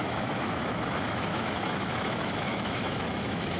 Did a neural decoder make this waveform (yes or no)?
yes